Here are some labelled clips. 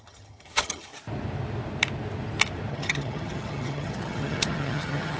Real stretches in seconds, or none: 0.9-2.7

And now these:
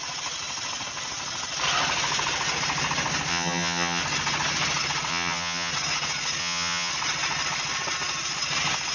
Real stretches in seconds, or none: 0.0-3.3; 4.0-5.1; 5.7-6.4; 6.9-8.9

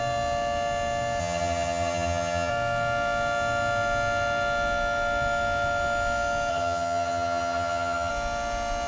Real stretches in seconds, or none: 0.0-1.2; 2.5-6.5; 8.1-8.9

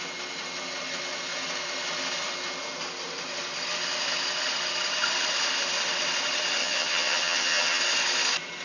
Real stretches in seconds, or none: 0.0-6.6; 7.8-8.6